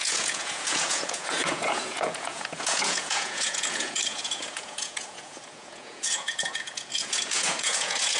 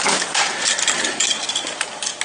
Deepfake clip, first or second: first